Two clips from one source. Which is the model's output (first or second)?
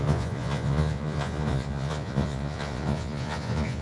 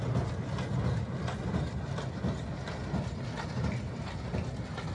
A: first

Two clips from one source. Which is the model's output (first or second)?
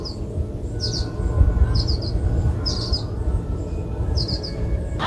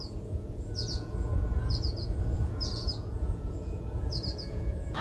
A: second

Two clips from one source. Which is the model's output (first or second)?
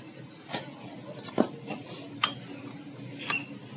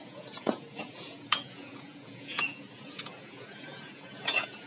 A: second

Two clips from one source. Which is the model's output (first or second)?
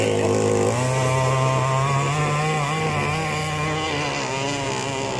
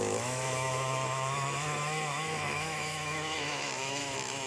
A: second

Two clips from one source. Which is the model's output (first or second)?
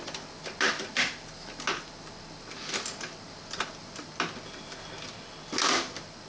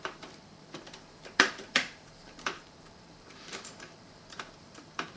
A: second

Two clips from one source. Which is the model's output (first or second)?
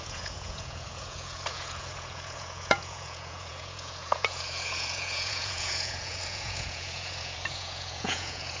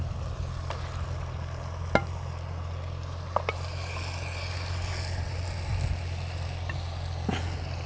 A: first